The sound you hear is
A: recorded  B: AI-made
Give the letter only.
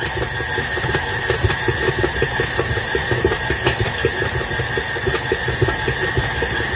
A